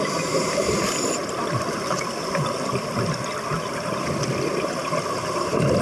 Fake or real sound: fake